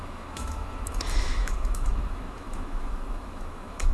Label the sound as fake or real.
fake